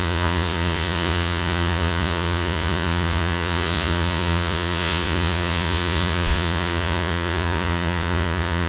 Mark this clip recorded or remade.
remade